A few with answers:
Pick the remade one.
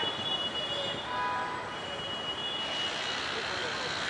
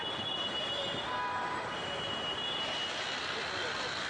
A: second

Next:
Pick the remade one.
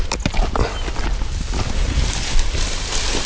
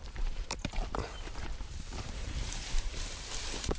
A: second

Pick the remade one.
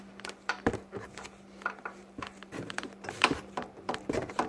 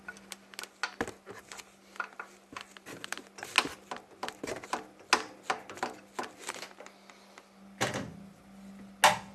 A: first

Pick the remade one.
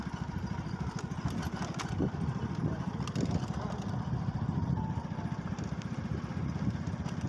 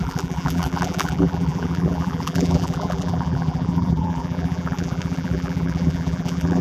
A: second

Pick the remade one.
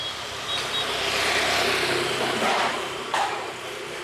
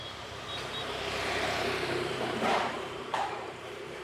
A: second